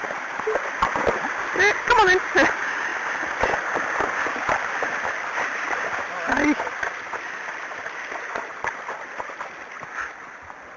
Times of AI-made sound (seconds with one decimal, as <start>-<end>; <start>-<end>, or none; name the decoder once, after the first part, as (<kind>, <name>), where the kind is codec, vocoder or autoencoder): 0.0-0.7 (vocoder, BigVGAN v2)